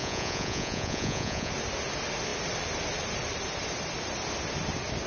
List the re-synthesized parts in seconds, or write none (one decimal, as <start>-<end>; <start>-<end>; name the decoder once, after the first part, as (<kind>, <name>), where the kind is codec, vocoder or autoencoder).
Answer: 0.0-1.5 (vocoder, Vocos)